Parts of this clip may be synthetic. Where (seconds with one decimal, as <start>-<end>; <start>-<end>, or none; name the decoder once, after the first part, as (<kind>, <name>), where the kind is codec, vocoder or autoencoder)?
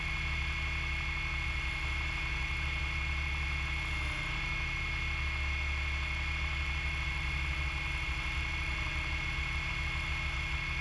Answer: none